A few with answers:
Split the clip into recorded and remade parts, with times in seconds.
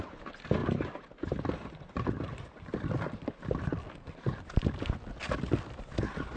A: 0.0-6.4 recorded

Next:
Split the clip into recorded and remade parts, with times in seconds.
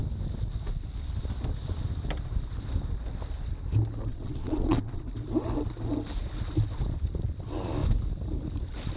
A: 0.0-4.1 recorded; 4.1-5.0 remade; 5.0-9.0 recorded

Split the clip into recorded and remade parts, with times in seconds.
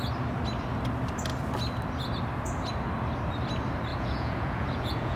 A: 0.0-3.9 recorded; 3.9-5.2 remade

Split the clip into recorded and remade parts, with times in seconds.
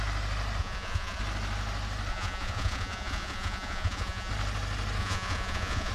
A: 0.0-0.6 recorded; 0.6-1.2 remade; 1.2-2.1 recorded; 2.1-4.3 remade; 4.3-5.0 recorded; 5.0-5.9 remade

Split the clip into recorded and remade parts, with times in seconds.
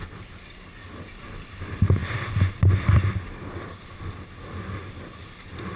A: 0.0-5.8 recorded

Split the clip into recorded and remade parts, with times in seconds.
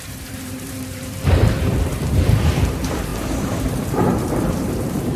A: 0.0-5.2 remade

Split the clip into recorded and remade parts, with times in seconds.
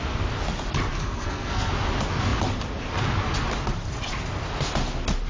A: 0.0-0.9 recorded; 0.9-1.7 remade; 1.7-5.3 recorded